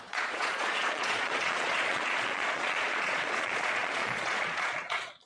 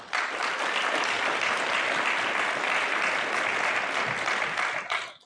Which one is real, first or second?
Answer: second